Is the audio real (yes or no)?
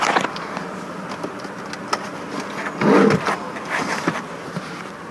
yes